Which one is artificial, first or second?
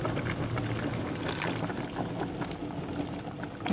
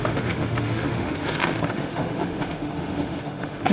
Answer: second